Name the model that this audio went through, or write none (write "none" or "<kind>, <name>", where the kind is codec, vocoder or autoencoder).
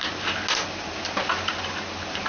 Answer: none